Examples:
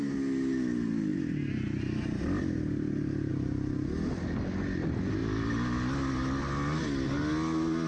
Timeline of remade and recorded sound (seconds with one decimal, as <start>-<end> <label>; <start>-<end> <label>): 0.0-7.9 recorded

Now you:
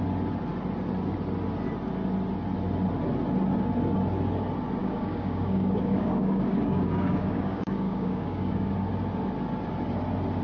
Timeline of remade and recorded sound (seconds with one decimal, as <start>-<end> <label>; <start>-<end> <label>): 0.0-4.8 recorded; 4.8-8.7 remade; 8.7-10.4 recorded

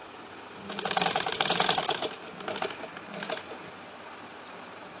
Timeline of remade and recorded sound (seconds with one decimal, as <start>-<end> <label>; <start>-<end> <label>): 0.0-5.0 recorded

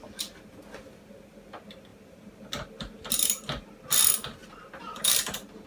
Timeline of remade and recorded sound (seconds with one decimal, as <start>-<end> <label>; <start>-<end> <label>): 0.0-5.7 recorded

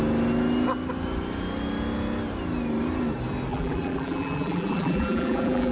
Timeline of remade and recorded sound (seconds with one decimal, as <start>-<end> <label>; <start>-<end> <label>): 0.0-3.5 recorded; 3.5-5.7 remade

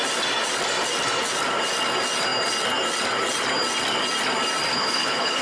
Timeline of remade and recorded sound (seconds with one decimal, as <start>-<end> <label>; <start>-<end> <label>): 0.0-4.7 recorded; 4.7-5.4 remade